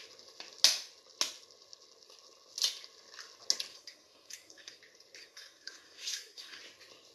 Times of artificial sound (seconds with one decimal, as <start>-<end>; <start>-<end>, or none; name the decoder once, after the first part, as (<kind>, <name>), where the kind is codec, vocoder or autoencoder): 3.7-4.8 (codec, SNAC); 5.2-6.6

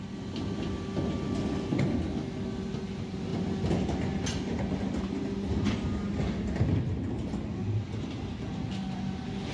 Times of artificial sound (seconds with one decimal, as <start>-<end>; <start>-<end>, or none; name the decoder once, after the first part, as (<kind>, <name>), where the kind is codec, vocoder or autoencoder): none

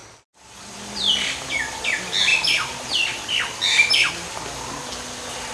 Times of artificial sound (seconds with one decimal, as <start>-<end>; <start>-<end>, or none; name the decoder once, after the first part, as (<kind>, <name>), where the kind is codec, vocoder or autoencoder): none

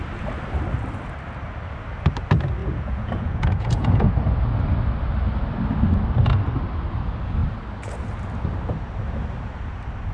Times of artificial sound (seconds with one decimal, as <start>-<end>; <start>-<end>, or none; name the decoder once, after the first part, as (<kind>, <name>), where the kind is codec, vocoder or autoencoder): 2.6-4.1 (vocoder, Vocos)

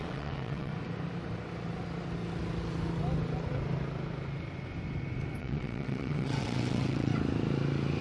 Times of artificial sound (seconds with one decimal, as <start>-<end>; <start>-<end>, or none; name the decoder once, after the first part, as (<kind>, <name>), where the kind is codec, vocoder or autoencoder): 0.0-0.7 (vocoder, WaveNeXt); 5.4-7.1

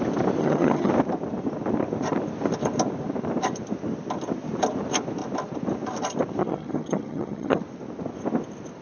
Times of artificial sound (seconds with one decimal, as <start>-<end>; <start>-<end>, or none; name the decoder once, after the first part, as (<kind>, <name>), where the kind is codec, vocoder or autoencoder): 0.4-0.9 (vocoder, HiFi-GAN); 6.4-7.6

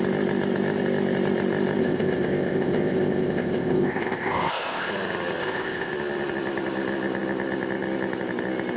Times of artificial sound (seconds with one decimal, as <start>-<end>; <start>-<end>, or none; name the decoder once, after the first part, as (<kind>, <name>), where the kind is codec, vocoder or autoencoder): 1.8-4.9 (codec, ZipCodec); 5.4-5.9